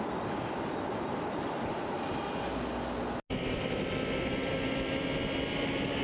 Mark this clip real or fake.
real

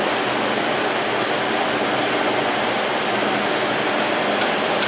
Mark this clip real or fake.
real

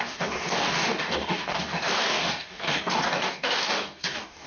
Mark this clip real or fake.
fake